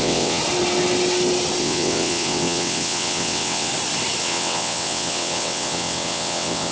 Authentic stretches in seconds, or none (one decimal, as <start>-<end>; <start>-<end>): 0.4-1.6; 3.7-4.2